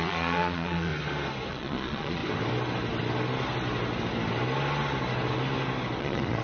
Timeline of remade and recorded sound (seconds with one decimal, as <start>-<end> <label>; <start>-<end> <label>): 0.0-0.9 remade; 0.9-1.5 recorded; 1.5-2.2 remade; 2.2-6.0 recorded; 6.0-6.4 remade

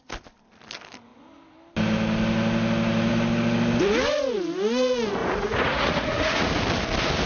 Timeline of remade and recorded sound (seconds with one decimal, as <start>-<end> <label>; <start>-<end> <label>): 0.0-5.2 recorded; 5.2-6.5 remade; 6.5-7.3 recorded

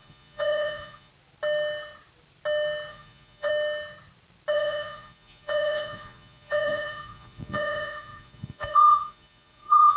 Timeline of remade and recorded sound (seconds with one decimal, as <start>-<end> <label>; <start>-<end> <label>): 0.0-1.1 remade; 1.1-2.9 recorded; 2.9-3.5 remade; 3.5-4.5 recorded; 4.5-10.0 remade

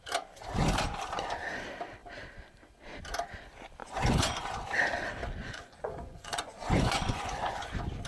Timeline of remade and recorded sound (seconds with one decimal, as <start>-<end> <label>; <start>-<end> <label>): 0.0-3.8 recorded; 3.8-4.4 remade; 4.4-5.4 recorded; 5.4-7.6 remade; 7.6-8.1 recorded

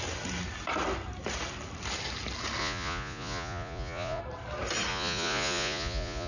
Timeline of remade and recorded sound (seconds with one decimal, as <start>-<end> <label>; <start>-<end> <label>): 0.0-2.6 recorded; 2.6-4.2 remade; 4.2-4.9 recorded; 4.9-6.3 remade

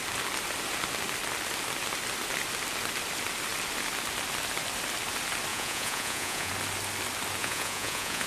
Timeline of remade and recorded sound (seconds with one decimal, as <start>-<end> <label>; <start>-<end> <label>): 0.0-5.5 recorded; 5.5-6.5 remade; 6.5-7.4 recorded; 7.4-8.3 remade